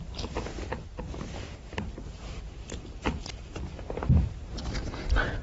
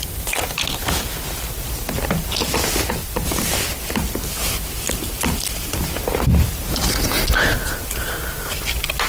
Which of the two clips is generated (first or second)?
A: first